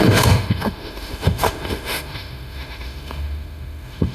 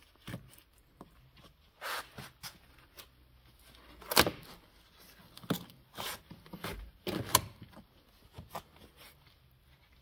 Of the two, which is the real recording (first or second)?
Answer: second